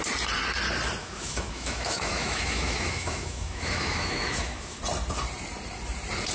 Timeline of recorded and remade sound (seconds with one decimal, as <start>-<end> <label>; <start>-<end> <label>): 0.0-1.0 recorded; 1.0-4.8 remade; 4.8-6.3 recorded